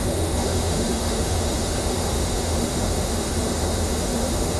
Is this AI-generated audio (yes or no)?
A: yes